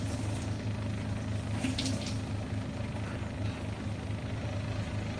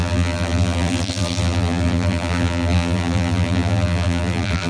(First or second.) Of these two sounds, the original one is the first